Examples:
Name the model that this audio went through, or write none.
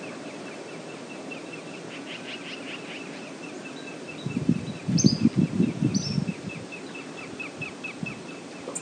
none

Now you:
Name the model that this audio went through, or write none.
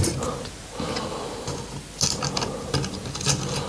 none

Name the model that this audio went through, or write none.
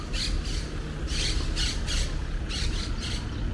none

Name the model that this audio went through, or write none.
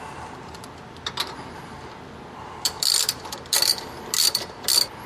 none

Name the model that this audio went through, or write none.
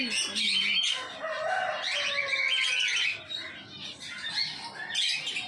none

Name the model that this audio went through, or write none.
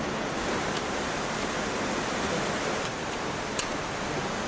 none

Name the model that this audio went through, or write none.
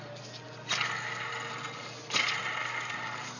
none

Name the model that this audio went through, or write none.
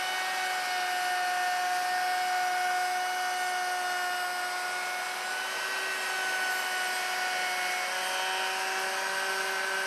none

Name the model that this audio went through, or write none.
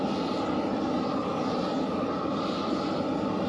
none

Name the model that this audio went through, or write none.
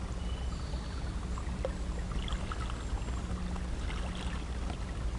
none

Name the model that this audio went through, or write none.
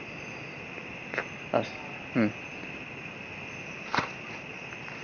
none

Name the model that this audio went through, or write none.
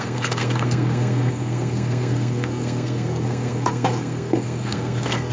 codec, SNAC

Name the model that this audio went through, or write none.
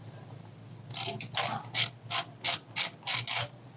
none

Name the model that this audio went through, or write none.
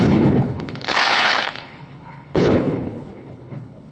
codec, HILCodec